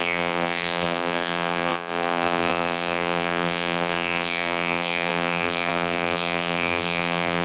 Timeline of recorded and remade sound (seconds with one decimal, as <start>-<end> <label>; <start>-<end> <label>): 0.0-7.4 remade